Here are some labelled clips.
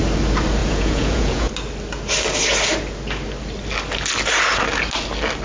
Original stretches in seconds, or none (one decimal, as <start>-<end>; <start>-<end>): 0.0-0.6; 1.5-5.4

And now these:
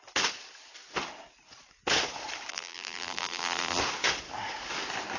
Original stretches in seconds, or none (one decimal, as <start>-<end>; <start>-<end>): 0.0-2.5; 3.8-5.2

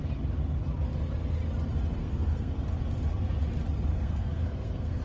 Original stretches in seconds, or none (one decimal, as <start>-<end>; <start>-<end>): 0.0-2.0; 2.5-3.9